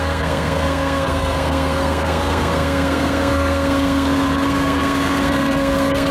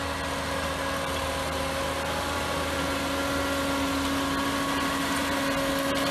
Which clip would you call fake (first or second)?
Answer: first